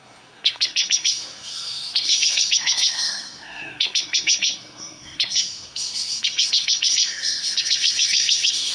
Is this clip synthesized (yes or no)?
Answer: yes